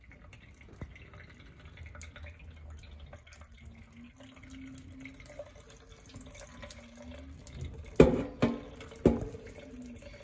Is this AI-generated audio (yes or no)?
no